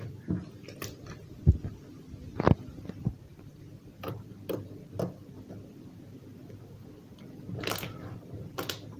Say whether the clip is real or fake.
real